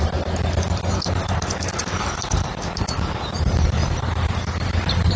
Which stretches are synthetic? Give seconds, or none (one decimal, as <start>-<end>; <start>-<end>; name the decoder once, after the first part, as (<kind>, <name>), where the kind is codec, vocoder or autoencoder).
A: none